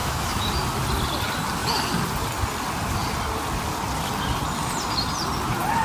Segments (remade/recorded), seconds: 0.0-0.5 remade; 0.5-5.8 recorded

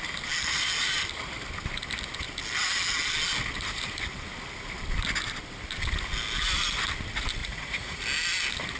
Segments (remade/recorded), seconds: 0.0-7.4 recorded; 7.4-8.0 remade; 8.0-8.8 recorded

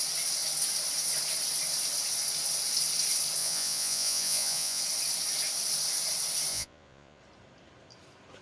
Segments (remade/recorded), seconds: 0.0-3.4 recorded; 3.4-4.8 remade; 4.8-6.5 recorded; 6.5-7.2 remade; 7.2-8.4 recorded

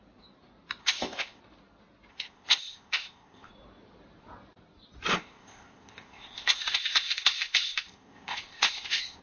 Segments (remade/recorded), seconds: 0.0-0.8 recorded; 0.8-1.4 remade; 1.4-2.1 recorded; 2.1-3.5 remade; 3.5-5.1 recorded; 5.1-9.2 remade

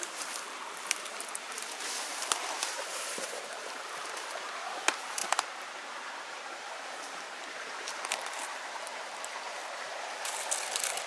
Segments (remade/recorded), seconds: 0.0-9.6 remade; 9.6-11.1 recorded

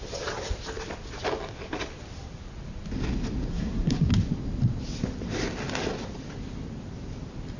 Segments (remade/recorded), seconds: 0.0-3.5 recorded; 3.5-4.1 remade; 4.1-7.6 recorded

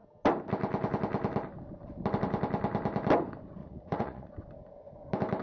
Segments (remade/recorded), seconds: 0.0-3.6 recorded; 3.6-4.3 remade; 4.3-5.4 recorded

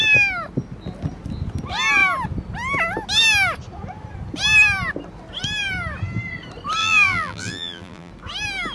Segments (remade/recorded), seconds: 0.0-6.8 recorded; 6.8-8.1 remade; 8.1-8.7 recorded